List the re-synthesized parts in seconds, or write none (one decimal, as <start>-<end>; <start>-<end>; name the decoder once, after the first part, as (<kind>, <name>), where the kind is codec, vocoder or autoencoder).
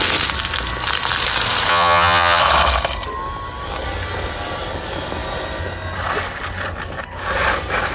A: 1.7-2.4 (vocoder, HiFi-GAN)